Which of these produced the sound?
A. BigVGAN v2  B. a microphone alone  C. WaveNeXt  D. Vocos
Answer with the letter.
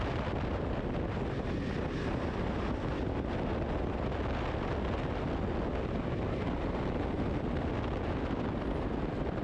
B